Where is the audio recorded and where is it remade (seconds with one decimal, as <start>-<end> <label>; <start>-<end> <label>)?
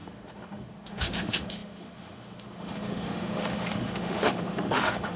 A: 0.0-5.2 remade